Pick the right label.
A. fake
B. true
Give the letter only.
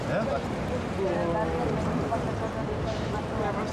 B